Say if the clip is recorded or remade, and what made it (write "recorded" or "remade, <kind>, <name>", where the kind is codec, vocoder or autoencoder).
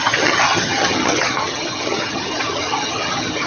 remade, vocoder, HiFi-GAN